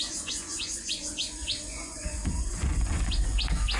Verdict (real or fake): fake